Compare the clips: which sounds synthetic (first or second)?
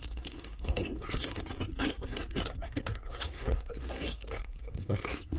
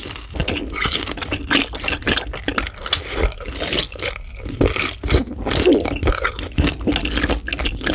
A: first